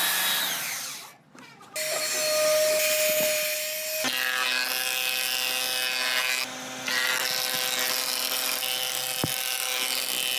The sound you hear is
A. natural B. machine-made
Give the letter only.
A